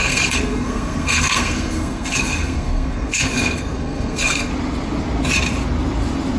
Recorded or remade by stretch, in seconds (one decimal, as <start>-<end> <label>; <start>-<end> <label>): 0.0-4.5 remade; 4.5-6.4 recorded